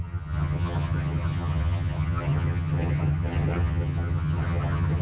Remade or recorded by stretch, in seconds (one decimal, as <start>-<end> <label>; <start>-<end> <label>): 0.0-5.0 remade